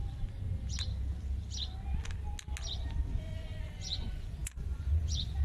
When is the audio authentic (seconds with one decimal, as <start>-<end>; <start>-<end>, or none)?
0.0-3.2

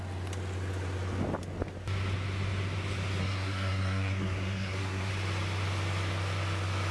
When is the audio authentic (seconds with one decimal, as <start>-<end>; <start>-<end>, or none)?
0.0-3.2; 5.1-6.9